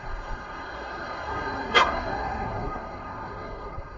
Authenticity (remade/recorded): remade